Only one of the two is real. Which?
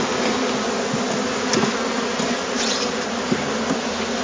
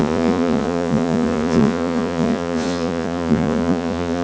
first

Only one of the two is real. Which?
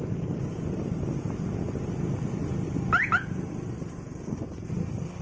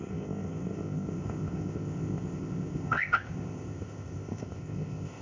first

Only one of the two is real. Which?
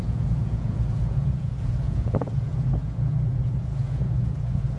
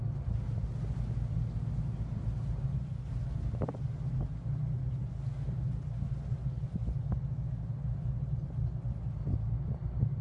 second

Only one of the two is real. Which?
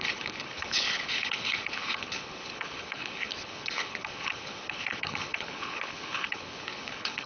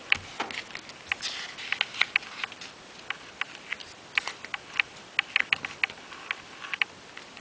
second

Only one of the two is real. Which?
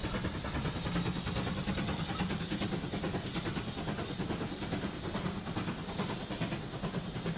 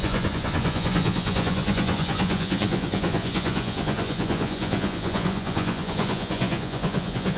first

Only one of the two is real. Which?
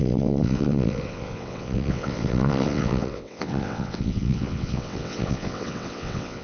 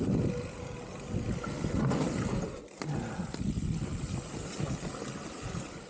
second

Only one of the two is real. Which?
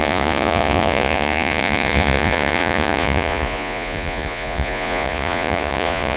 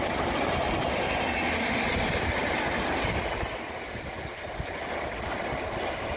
second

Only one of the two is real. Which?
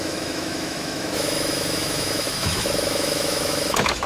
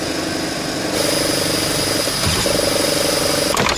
second